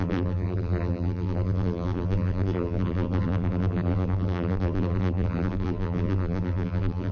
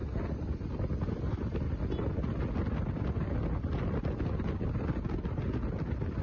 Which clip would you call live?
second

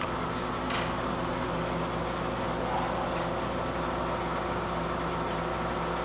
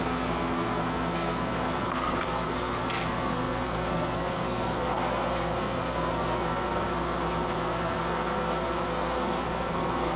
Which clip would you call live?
first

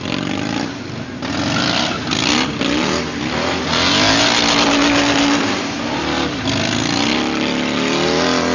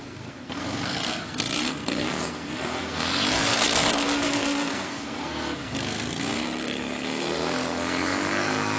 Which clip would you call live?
first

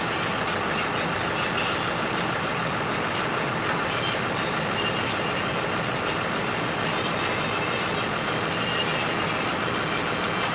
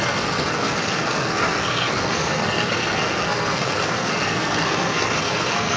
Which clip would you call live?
first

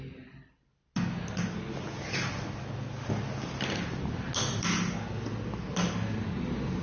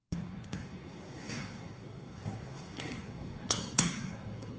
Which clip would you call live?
first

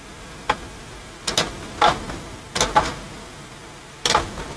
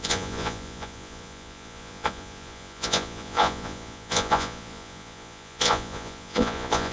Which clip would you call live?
first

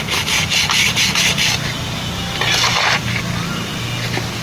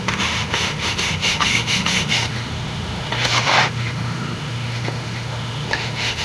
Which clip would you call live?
first